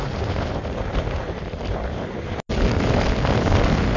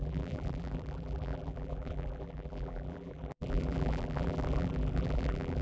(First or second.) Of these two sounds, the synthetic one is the second